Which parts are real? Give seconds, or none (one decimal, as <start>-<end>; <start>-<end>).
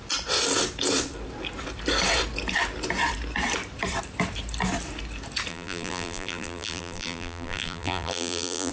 0.0-5.5